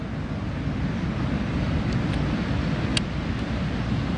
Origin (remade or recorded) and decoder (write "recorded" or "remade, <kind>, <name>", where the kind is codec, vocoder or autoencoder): recorded